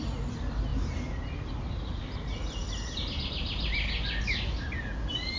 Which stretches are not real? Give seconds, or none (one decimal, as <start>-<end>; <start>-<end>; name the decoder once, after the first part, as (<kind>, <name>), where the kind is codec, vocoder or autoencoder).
none